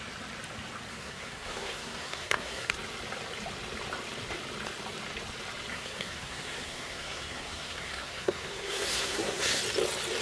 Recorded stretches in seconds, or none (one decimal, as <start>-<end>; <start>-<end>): 0.0-0.9; 2.7-5.7; 9.6-10.2